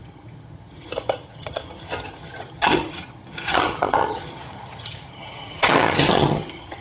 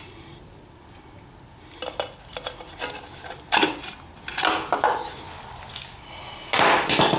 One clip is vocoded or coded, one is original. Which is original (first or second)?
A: second